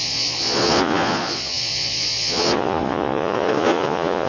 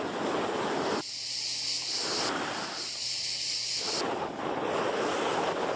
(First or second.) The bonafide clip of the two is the second